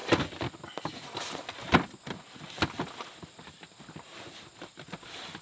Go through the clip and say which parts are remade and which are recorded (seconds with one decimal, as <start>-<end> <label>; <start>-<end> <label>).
0.0-5.4 recorded